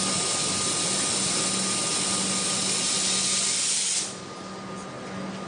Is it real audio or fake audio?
real